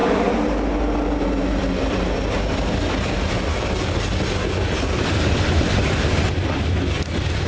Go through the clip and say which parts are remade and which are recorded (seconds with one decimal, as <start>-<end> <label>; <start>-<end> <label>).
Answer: 0.0-7.5 recorded